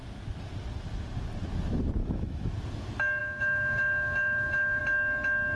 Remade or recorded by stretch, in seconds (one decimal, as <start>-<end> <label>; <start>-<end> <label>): 0.0-2.0 recorded; 2.0-2.5 remade; 2.5-3.2 recorded; 3.2-4.8 remade; 4.8-5.6 recorded